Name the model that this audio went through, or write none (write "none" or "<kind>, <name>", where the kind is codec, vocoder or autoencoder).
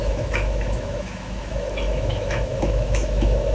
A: autoencoder, DAC-VAE